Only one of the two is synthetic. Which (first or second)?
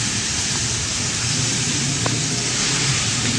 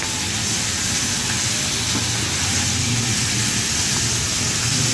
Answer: first